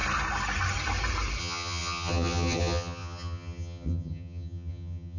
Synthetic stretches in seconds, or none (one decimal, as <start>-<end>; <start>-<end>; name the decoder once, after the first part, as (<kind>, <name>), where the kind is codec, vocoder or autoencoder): 1.4-5.2 (vocoder, HiFi-GAN)